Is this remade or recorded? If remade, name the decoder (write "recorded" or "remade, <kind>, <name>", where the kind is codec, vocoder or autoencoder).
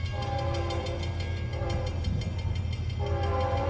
recorded